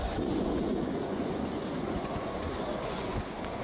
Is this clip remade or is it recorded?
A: remade